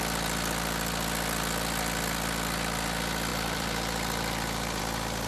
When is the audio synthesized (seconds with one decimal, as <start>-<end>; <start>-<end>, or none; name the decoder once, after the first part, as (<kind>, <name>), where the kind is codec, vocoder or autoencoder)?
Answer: 3.3-4.8 (vocoder, BigVGAN v2)